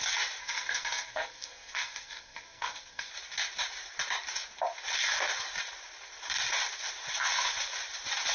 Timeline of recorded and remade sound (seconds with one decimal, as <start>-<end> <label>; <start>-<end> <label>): 0.0-0.4 recorded; 0.4-3.1 remade; 3.1-8.3 recorded